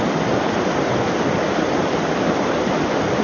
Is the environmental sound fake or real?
real